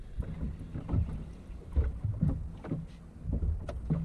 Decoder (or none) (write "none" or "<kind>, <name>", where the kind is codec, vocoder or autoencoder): none